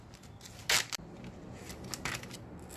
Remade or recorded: recorded